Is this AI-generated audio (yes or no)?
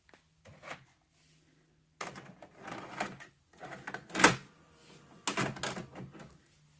no